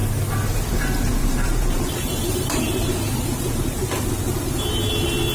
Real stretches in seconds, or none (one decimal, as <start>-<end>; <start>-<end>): 0.0-1.2; 3.9-5.3